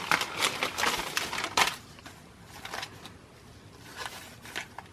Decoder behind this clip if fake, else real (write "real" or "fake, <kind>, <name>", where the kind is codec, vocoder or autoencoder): real